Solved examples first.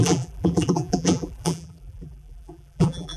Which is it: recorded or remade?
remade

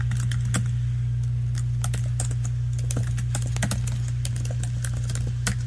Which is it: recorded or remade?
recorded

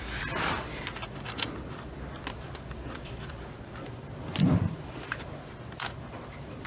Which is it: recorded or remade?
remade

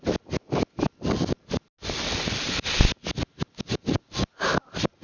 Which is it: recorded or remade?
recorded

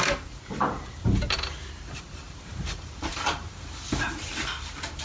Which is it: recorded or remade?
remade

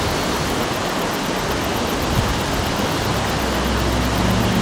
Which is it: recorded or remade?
recorded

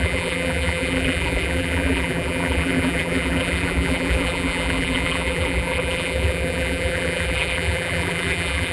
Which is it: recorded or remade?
remade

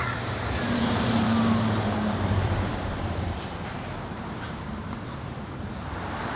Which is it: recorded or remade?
remade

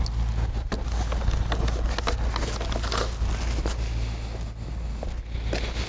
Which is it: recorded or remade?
recorded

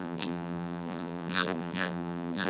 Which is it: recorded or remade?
remade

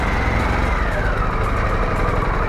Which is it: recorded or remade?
recorded